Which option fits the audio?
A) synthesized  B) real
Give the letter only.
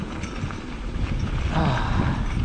B